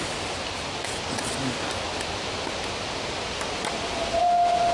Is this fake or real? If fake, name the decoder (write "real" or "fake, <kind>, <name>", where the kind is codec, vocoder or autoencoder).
real